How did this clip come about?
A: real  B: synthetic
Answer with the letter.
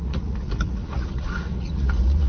B